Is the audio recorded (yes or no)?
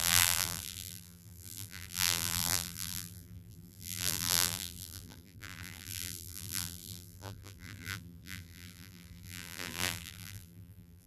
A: no